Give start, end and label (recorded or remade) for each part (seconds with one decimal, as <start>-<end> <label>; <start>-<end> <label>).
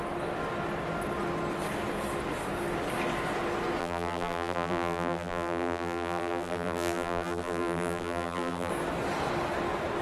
0.0-3.8 recorded; 3.8-8.7 remade; 8.7-10.0 recorded